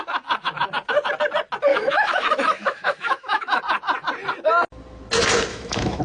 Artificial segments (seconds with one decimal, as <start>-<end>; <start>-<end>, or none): 1.7-3.6; 5.5-6.0